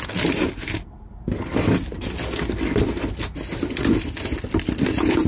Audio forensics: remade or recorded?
recorded